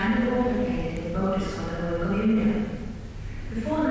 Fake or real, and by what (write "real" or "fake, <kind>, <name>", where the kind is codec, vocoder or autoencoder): real